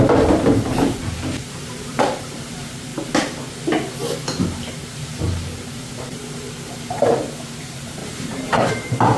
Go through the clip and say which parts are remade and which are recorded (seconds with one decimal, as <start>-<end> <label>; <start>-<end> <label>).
0.0-2.9 remade; 2.9-4.7 recorded; 4.7-9.2 remade